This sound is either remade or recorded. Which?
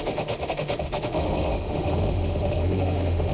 remade